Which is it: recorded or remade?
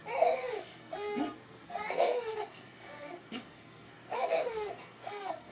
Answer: remade